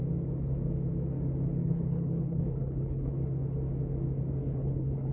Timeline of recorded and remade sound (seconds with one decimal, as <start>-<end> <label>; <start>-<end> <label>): 0.0-1.6 recorded; 1.6-3.1 remade; 3.1-4.4 recorded; 4.4-5.1 remade